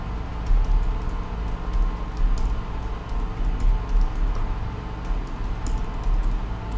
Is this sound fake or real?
real